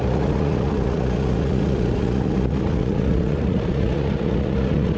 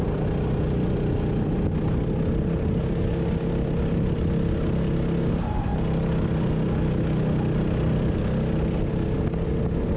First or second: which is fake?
first